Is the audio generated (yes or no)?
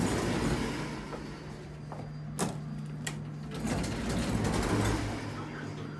no